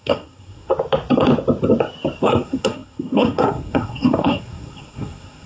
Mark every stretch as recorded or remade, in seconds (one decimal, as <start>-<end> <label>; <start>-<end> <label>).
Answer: 0.0-0.7 remade; 0.7-2.2 recorded; 2.2-5.5 remade